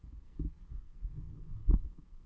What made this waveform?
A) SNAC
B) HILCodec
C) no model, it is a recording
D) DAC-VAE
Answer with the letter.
A